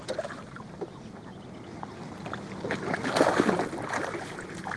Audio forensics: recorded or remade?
recorded